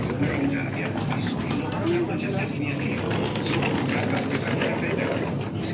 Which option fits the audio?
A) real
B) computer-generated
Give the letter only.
A